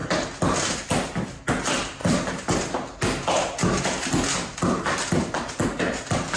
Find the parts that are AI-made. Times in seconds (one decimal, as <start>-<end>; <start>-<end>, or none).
1.5-2.0; 5.8-6.4